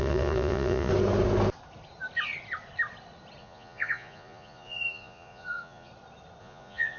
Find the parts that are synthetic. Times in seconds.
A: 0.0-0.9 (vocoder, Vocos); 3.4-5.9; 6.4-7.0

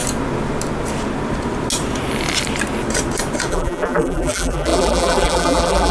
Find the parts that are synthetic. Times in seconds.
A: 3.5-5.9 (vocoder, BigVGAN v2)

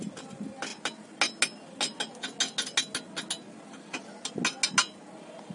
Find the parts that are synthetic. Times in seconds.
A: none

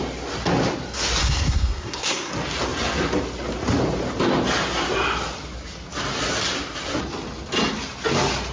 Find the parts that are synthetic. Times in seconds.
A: 1.2-2.3 (codec, SNAC)

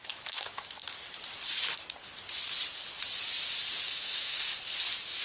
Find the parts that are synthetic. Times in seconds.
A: 0.0-0.8 (autoencoder, DAC-VAE); 3.9-4.3

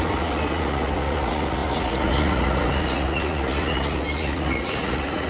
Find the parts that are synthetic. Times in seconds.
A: 0.0-5.3 (vocoder, Vocos)

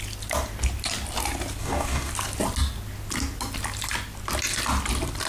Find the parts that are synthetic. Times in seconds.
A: 1.6-2.1 (codec, DAC)